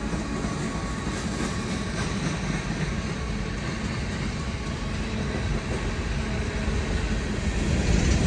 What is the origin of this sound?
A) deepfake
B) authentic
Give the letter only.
B